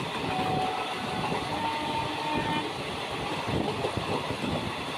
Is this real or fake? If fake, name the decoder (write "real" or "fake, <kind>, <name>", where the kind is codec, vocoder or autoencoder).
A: real